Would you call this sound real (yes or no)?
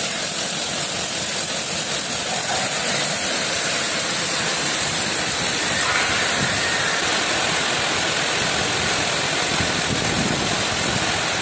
yes